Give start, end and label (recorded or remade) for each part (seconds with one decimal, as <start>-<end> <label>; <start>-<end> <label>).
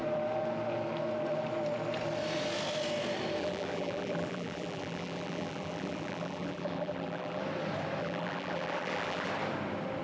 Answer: 0.0-3.4 recorded; 3.4-7.4 remade; 7.4-8.0 recorded; 8.0-9.3 remade; 9.3-10.0 recorded